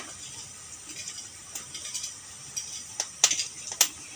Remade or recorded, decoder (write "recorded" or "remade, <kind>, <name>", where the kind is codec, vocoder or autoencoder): recorded